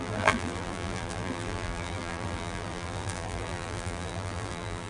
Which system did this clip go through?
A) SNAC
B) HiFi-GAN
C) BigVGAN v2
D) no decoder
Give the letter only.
C